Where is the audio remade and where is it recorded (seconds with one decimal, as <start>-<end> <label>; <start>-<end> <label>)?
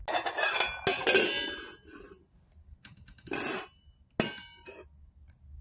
0.0-5.6 recorded